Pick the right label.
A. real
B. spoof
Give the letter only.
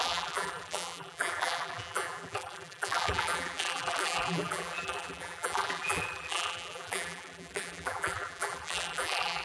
B